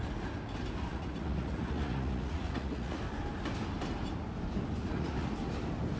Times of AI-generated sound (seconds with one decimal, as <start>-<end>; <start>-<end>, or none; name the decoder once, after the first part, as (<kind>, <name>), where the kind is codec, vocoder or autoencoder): 0.9-3.0 (vocoder, Vocos); 4.8-5.3